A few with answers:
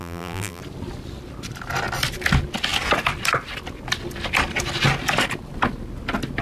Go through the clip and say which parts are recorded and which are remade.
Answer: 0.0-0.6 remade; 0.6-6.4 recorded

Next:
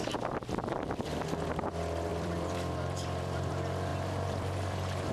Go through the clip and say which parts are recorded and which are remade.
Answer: 0.0-2.1 recorded; 2.1-3.5 remade; 3.5-3.9 recorded; 3.9-5.1 remade

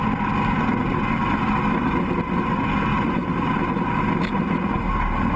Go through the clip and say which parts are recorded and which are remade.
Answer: 0.0-2.9 recorded; 2.9-4.4 remade; 4.4-5.4 recorded

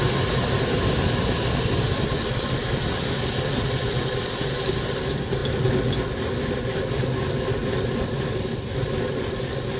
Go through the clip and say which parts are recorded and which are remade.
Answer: 0.0-9.8 recorded

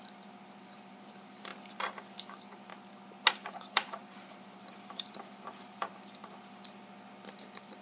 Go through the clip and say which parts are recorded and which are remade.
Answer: 0.0-1.5 remade; 1.5-2.2 recorded; 2.2-2.7 remade; 2.7-3.3 recorded; 3.3-6.2 remade; 6.2-7.3 recorded; 7.3-7.8 remade

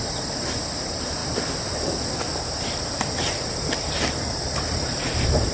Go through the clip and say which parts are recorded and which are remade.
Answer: 0.0-1.2 remade; 1.2-2.6 recorded; 2.6-5.5 remade